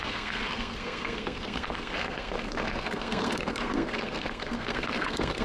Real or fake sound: fake